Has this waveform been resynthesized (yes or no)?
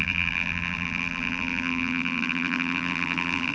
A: yes